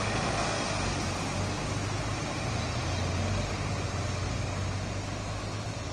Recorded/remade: recorded